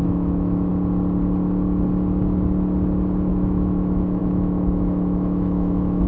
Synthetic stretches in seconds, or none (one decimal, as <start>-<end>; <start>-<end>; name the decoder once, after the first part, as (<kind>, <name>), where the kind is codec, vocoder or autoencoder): 0.0-0.7 (autoencoder, DAC-VAE); 3.3-6.1